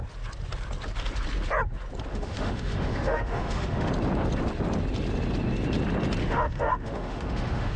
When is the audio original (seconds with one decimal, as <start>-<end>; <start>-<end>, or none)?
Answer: 0.0-2.1; 3.9-6.2